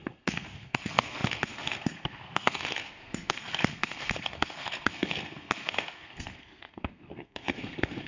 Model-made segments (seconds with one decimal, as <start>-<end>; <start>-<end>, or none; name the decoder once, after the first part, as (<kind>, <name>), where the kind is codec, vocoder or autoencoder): 0.0-8.1 (codec, SNAC)